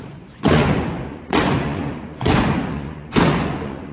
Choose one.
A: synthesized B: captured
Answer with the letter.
A